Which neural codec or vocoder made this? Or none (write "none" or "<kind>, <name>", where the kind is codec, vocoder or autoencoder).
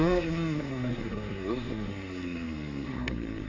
codec, SNAC